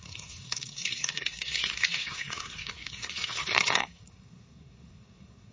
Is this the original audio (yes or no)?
no